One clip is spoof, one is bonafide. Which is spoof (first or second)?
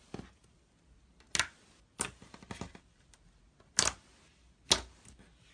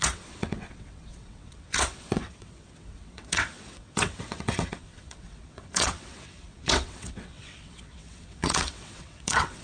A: second